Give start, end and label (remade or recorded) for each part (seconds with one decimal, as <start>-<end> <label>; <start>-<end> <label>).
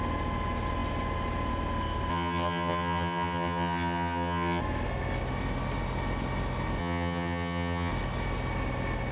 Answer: 0.0-2.1 recorded; 2.1-4.6 remade; 4.6-6.8 recorded; 6.8-7.9 remade; 7.9-9.1 recorded